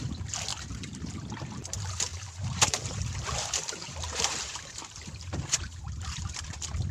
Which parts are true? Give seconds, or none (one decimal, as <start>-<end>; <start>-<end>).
0.0-2.1; 6.2-6.9